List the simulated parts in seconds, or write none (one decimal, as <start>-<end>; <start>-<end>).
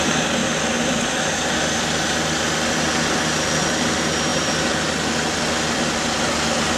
none